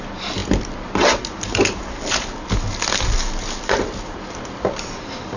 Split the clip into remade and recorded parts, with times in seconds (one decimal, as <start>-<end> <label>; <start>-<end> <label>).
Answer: 0.0-5.4 recorded